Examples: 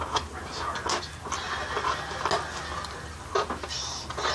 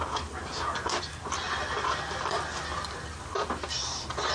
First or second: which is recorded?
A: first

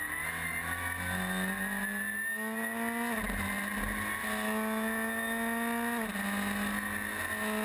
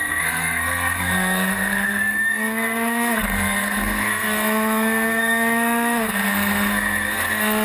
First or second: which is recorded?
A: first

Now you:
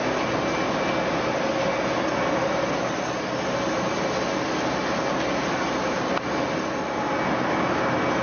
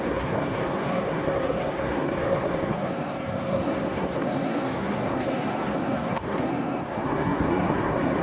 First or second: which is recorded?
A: first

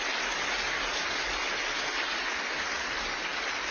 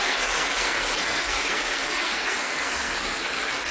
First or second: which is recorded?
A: first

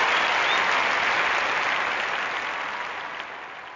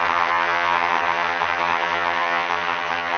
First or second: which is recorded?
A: first